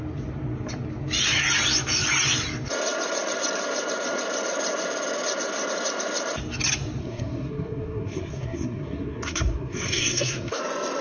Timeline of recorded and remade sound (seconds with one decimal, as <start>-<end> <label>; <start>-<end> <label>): 0.0-7.0 recorded; 7.0-10.6 remade; 10.6-11.0 recorded